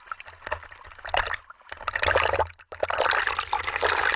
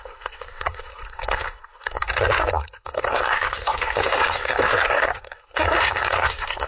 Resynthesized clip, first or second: second